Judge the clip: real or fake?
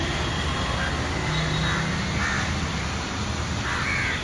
real